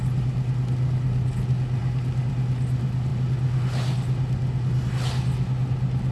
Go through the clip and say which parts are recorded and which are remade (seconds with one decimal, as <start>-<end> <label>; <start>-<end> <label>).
0.0-6.1 recorded